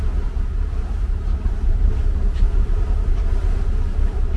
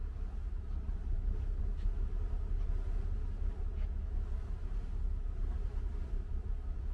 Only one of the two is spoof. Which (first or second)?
first